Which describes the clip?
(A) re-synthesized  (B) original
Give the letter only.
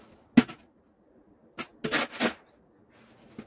B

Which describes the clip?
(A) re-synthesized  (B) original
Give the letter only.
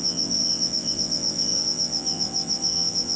A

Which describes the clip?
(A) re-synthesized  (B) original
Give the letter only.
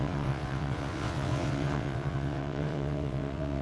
A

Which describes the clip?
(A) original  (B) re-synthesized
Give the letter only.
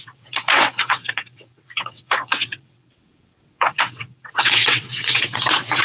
B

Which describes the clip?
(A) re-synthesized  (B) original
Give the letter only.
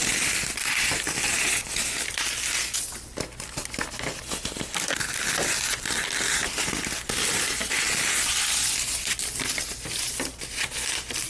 B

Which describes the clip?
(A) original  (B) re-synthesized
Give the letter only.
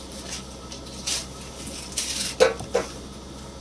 A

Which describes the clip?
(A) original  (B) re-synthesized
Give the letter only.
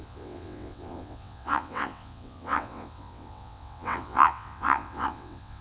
B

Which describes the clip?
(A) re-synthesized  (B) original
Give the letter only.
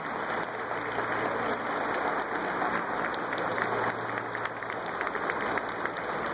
B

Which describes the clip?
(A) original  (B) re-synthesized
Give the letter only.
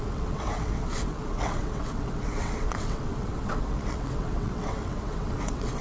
B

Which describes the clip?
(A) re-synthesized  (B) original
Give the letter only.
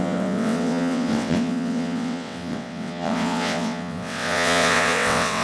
A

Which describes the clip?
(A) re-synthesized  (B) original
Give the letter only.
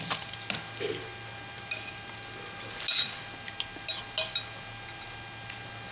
B